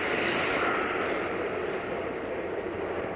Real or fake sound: real